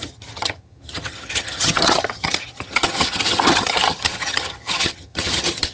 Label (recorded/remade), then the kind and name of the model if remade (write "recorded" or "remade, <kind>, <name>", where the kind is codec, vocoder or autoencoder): remade, vocoder, HiFi-GAN